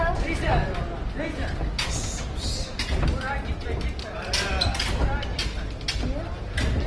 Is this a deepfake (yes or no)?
no